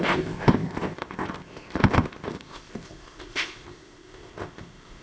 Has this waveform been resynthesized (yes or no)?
yes